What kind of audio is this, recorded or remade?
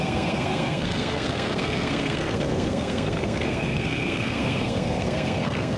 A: remade